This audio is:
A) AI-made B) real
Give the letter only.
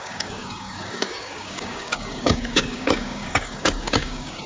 A